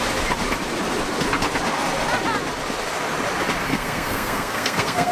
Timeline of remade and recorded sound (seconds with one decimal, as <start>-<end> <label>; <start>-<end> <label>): 0.0-3.7 recorded; 3.7-5.1 remade